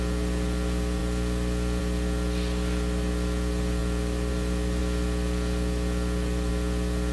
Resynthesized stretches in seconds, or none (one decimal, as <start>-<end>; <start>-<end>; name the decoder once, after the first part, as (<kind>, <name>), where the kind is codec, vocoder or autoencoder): none